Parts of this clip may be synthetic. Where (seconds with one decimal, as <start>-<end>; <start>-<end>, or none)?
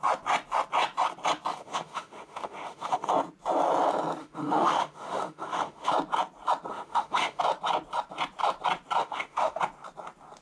1.5-3.1; 4.2-5.9; 6.7-7.4; 9.0-9.6